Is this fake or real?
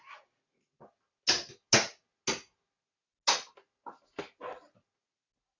real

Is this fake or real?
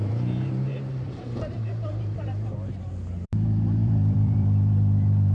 fake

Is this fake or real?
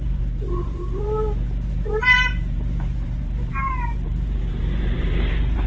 fake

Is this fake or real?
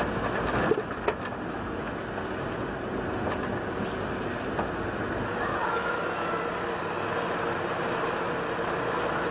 real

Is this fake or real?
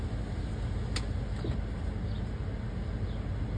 real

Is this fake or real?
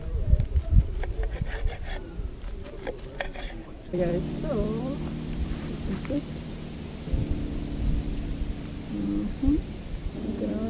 fake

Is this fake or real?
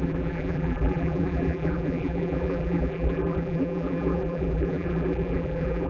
fake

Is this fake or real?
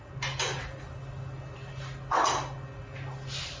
real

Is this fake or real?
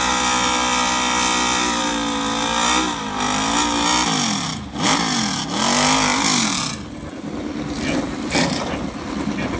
real